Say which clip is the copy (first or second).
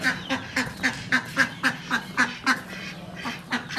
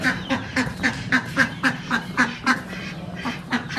second